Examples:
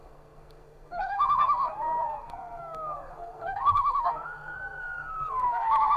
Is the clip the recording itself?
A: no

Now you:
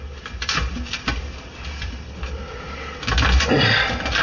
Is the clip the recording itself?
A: yes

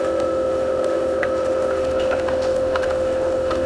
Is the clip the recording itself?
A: no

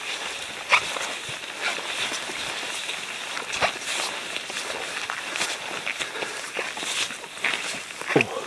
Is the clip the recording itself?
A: yes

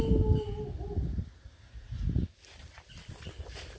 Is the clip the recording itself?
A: yes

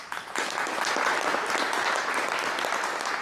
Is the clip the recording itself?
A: yes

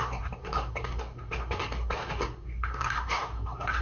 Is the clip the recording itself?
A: no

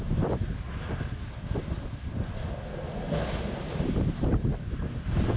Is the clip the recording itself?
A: yes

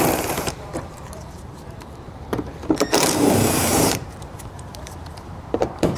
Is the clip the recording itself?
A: no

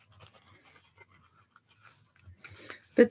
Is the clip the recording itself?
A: yes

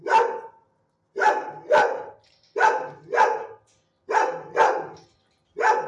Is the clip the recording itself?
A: yes